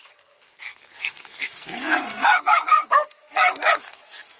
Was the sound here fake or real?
fake